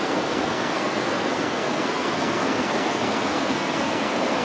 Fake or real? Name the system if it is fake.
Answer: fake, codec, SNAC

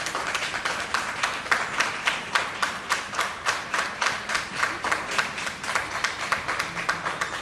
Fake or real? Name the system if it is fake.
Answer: fake, vocoder, BigVGAN v2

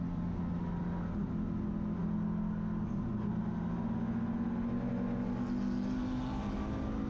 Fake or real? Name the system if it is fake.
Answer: real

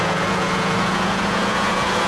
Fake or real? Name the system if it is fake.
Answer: fake, vocoder, Vocos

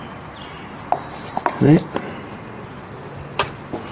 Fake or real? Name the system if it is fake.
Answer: real